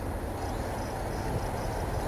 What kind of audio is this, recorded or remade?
recorded